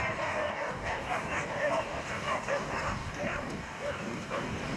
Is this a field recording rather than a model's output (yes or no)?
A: no